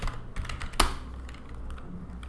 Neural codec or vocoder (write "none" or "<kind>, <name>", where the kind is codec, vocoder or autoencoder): none